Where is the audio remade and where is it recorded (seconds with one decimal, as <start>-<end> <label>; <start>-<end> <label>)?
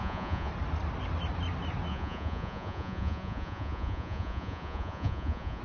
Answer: 0.0-0.5 remade; 0.5-1.9 recorded; 1.9-5.6 remade